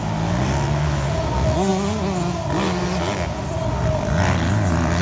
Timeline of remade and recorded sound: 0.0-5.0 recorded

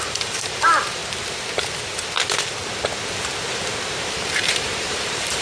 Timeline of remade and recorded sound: 0.0-1.0 remade; 1.0-4.2 recorded; 4.2-5.4 remade

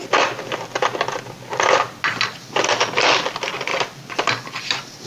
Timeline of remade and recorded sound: 0.0-5.1 recorded